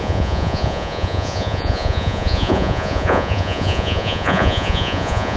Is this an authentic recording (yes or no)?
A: no